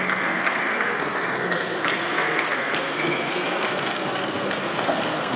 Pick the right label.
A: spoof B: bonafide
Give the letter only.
A